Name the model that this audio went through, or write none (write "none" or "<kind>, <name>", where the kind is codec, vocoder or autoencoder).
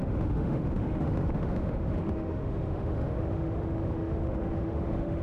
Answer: autoencoder, DAC-VAE